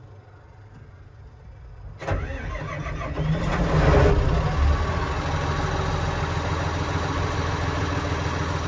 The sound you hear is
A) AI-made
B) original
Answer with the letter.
B